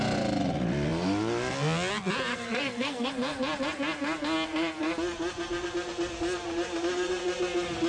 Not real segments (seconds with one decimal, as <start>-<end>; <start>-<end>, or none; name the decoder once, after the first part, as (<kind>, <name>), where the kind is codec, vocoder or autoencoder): 2.3-3.1 (codec, SNAC)